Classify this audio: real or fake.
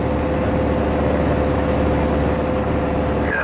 real